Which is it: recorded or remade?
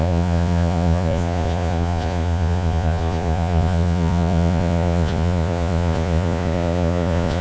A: remade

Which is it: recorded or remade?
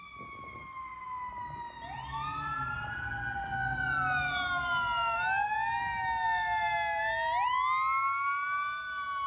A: recorded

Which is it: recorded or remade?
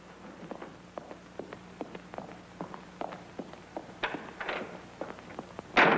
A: recorded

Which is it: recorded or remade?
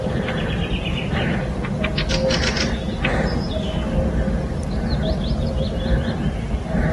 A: recorded